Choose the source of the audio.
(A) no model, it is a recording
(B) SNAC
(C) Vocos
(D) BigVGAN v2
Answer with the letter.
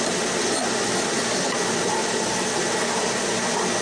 A